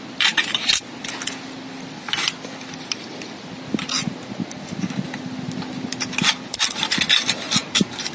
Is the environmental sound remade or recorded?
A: recorded